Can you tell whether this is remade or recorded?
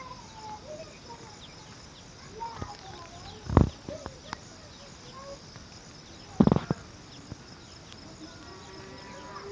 recorded